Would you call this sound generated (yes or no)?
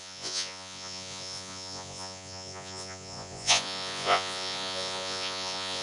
yes